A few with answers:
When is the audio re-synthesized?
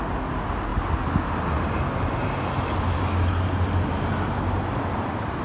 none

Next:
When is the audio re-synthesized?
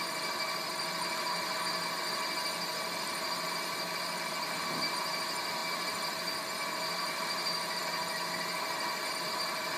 none